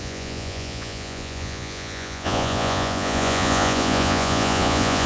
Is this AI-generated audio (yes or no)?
yes